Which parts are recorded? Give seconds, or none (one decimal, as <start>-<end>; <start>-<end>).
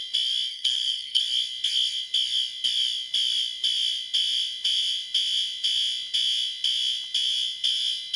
0.0-0.5; 1.2-8.2